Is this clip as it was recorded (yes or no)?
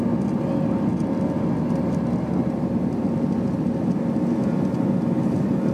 yes